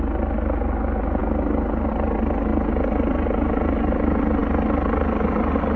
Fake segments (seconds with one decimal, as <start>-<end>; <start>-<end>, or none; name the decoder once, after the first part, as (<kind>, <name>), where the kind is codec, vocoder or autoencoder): none